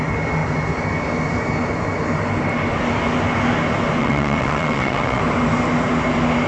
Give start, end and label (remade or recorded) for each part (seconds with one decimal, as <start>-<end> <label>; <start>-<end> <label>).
0.0-4.0 recorded; 4.0-5.2 remade; 5.2-6.5 recorded